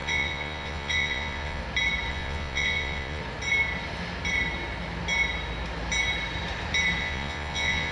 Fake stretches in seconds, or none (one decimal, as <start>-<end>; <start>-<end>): 0.0-1.6; 2.1-3.2; 7.0-7.9